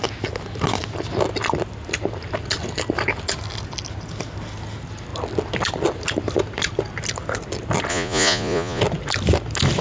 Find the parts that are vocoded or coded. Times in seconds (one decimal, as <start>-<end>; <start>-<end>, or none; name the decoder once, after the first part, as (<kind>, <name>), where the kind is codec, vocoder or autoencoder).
7.9-8.8 (vocoder, Vocos)